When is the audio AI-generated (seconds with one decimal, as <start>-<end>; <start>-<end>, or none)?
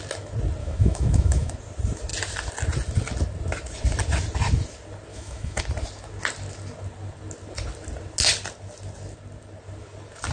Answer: 0.6-1.5; 5.1-5.6